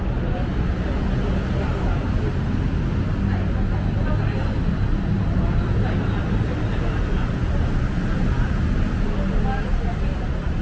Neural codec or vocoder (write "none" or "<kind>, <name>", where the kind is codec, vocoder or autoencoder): none